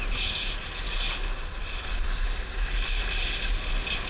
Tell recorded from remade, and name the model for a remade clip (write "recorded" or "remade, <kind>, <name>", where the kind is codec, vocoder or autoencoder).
recorded